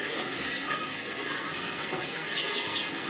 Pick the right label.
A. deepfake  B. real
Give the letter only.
A